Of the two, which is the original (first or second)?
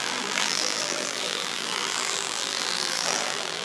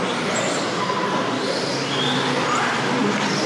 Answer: second